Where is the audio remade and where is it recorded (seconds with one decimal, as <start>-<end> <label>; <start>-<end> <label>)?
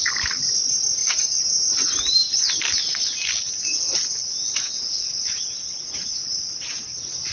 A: 0.0-1.0 recorded; 1.0-1.9 remade; 1.9-4.3 recorded; 4.3-7.3 remade